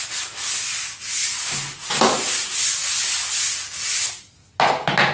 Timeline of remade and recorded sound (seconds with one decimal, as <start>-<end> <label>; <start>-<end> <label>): 0.0-5.1 recorded